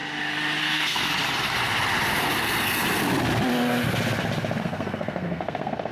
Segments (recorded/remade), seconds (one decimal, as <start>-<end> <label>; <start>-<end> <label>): 0.0-0.6 recorded; 0.6-1.1 remade; 1.1-4.6 recorded; 4.6-5.9 remade